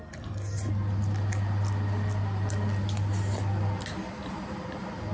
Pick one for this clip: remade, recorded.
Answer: recorded